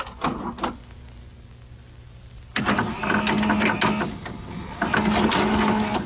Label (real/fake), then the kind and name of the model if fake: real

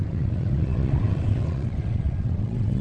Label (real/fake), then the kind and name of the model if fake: fake, vocoder, WaveNeXt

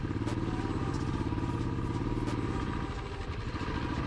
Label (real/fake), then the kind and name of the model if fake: real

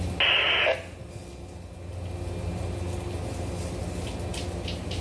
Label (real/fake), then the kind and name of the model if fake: real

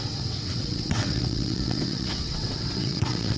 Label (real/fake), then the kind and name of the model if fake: fake, vocoder, WaveNeXt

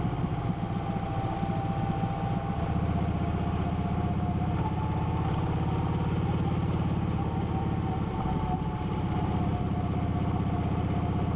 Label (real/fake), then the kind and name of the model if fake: real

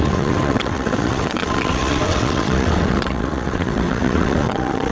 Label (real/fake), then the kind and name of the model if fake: fake, vocoder, WaveNeXt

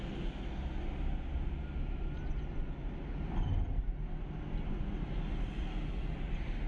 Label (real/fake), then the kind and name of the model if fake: real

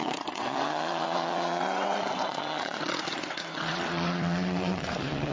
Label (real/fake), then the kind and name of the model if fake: fake, vocoder, WaveNeXt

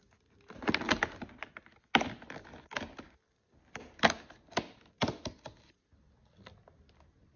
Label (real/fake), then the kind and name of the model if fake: real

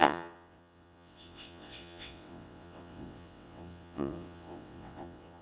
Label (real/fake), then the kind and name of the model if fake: fake, vocoder, WaveNeXt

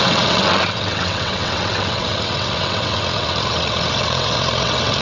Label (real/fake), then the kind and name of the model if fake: fake, vocoder, WaveNeXt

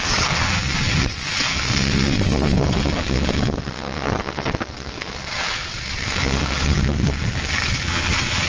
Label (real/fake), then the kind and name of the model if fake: fake, vocoder, WaveNeXt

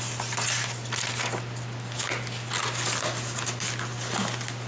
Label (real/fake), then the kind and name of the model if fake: real